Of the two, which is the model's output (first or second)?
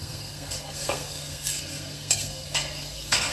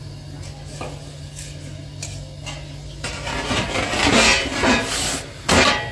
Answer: first